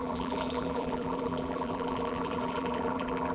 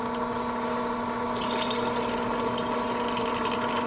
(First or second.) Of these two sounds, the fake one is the first